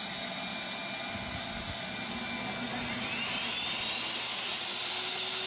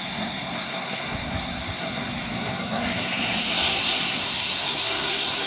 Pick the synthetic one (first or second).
second